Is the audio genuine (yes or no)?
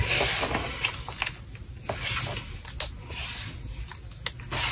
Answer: yes